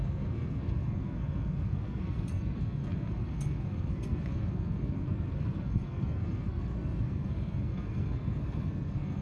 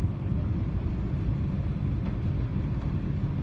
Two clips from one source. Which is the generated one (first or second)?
first